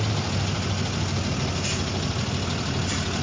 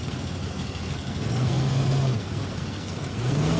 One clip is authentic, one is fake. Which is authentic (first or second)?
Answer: first